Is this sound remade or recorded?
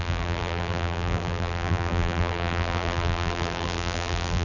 remade